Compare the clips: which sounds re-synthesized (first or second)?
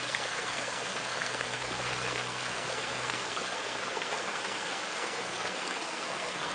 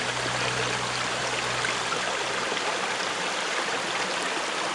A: first